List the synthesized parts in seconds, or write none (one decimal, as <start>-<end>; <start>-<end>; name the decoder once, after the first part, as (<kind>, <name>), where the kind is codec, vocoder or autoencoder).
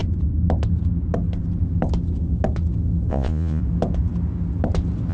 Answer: 3.1-3.6 (vocoder, Vocos)